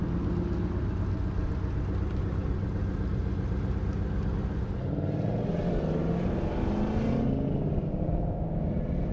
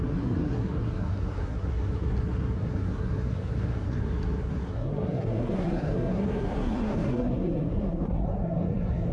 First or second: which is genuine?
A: first